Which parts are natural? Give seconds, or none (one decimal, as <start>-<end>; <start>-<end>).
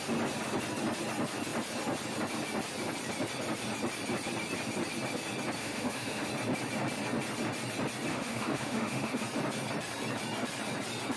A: 0.0-5.6; 6.3-8.1; 9.2-11.2